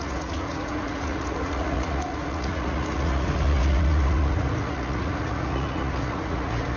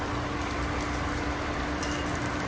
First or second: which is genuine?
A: second